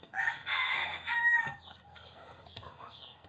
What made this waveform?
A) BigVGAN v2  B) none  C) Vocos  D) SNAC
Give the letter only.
D